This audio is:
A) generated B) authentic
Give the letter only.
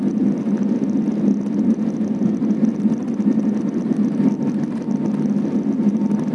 B